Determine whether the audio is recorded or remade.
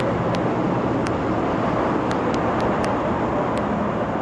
recorded